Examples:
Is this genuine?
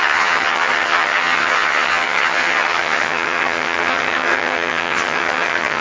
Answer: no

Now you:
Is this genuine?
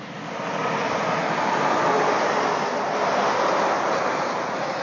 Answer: yes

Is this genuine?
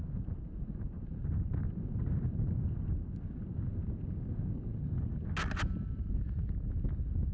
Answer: yes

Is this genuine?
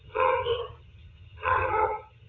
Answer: no